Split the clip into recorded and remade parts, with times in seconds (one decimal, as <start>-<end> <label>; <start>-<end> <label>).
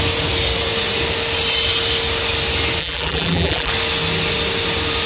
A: 0.0-2.8 recorded; 2.8-3.7 remade; 3.7-5.1 recorded